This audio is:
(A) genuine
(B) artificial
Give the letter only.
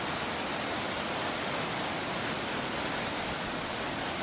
A